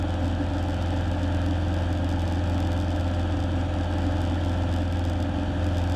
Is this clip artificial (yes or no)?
no